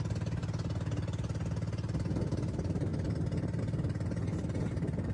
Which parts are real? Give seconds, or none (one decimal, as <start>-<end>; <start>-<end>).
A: 0.0-5.1